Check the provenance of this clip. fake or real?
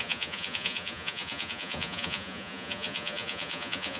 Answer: fake